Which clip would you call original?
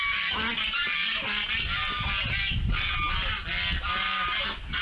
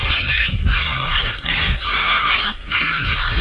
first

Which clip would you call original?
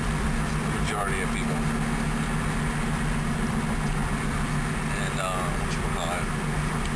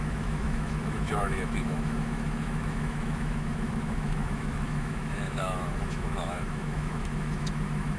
first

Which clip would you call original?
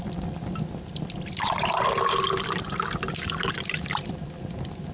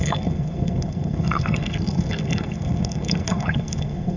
first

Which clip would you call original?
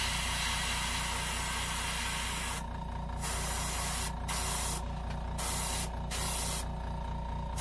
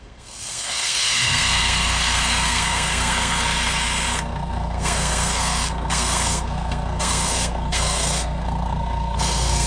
first